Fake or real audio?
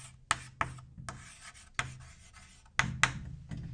real